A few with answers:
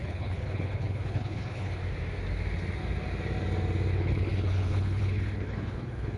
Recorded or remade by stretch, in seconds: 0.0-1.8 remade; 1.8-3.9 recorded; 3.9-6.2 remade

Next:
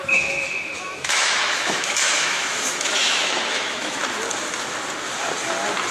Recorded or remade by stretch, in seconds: 0.0-4.0 remade; 4.0-5.9 recorded

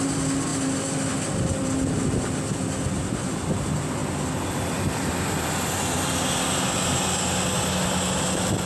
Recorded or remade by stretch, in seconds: 0.0-4.0 recorded; 4.0-6.0 remade; 6.0-8.7 recorded

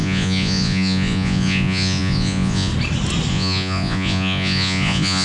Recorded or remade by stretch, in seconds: 0.0-2.7 remade; 2.7-3.3 recorded; 3.3-5.2 remade

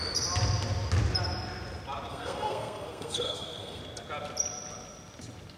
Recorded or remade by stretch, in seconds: 0.0-2.1 recorded; 2.1-3.8 remade; 3.8-5.6 recorded

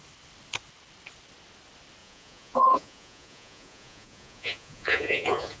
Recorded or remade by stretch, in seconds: 0.0-2.0 recorded; 2.0-5.6 remade